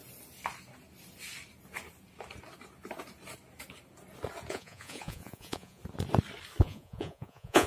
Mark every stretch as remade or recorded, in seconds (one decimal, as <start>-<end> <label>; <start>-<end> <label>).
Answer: 0.0-4.5 recorded; 4.5-5.8 remade; 5.8-6.6 recorded; 6.6-7.7 remade